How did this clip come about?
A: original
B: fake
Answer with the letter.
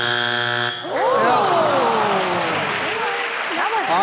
A